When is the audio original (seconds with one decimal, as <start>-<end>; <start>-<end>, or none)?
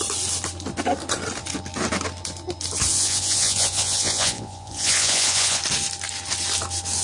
0.0-2.9; 5.6-7.0